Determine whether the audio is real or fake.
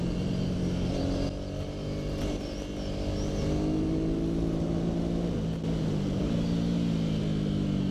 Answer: real